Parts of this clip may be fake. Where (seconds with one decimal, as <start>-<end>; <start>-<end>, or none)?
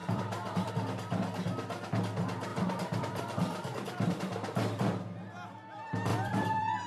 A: 0.0-0.7; 2.5-4.2; 6.1-6.9